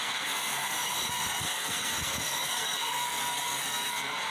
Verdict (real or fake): fake